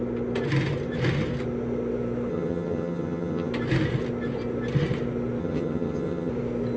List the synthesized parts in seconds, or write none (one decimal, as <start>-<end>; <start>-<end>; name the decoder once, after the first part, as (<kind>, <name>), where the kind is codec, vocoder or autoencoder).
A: 2.3-3.5 (vocoder, HiFi-GAN); 5.4-6.3